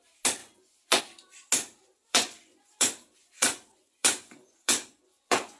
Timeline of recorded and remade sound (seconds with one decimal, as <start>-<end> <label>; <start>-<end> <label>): 0.0-0.4 recorded; 0.4-1.0 remade; 1.0-2.0 recorded; 2.0-5.6 remade